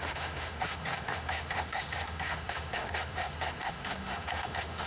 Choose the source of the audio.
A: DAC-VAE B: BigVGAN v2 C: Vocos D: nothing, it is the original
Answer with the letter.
A